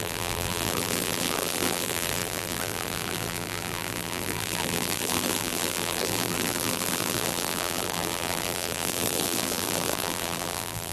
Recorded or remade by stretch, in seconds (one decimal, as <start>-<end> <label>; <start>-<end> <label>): 0.0-10.9 remade